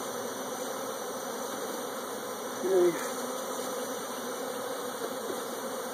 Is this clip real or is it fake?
fake